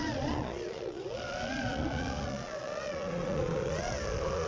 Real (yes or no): no